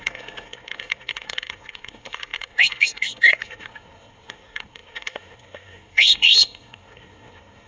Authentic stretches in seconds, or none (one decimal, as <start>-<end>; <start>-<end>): none